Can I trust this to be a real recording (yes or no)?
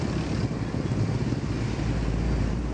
yes